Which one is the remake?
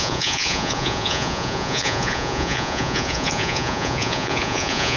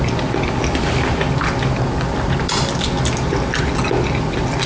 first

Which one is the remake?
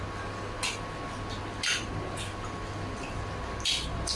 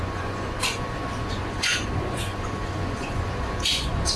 second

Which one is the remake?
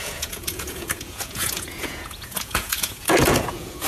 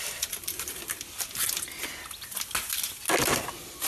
first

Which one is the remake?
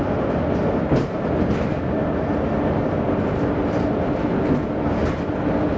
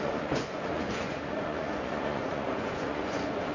second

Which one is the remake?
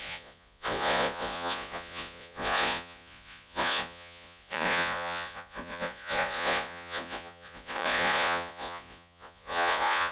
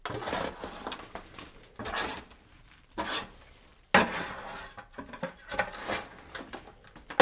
first